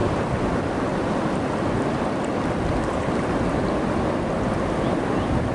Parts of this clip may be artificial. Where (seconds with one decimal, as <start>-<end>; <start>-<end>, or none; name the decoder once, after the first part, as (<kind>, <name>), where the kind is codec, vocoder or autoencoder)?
none